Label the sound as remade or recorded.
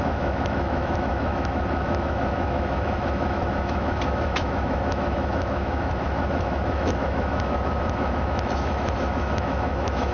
remade